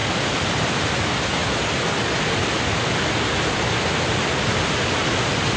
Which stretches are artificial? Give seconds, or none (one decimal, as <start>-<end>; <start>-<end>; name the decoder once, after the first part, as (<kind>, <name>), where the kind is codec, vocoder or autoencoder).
none